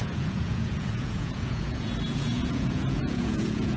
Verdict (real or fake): fake